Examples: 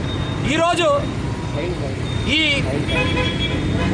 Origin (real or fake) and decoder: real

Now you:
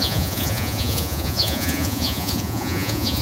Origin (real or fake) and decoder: fake, vocoder, Vocos